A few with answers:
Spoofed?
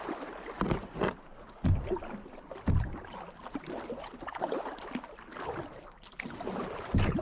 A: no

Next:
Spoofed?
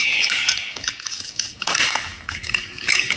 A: yes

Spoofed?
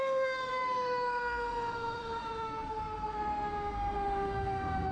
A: yes